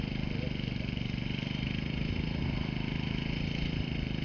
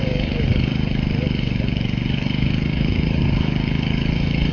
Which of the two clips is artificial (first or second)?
second